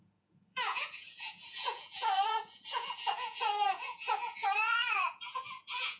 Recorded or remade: remade